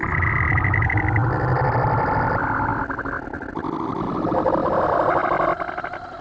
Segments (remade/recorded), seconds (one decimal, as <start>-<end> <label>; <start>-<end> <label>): 0.0-4.6 recorded; 4.6-6.2 remade